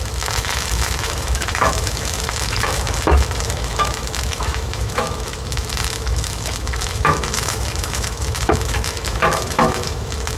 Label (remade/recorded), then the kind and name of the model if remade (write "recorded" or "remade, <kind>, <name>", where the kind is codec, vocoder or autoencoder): remade, autoencoder, DAC-VAE